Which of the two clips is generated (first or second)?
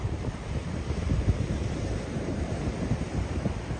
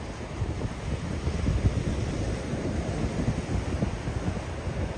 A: first